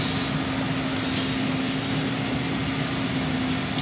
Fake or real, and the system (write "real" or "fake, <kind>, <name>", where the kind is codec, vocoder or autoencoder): real